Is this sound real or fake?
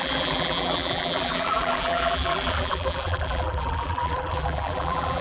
fake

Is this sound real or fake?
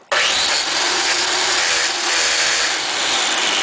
real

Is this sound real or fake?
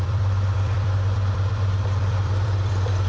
fake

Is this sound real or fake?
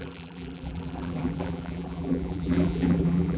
fake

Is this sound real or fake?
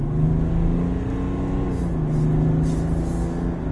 real